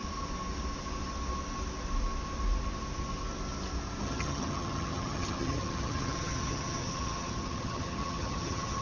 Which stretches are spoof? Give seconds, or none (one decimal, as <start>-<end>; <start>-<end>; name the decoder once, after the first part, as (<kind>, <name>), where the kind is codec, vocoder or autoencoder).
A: 4.0-8.8 (vocoder, HiFi-GAN)